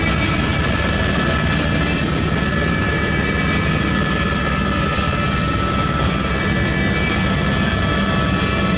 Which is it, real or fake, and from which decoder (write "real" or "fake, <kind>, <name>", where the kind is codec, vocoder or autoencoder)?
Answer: real